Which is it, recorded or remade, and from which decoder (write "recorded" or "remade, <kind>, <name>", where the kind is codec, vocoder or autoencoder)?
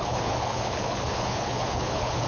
remade, codec, HILCodec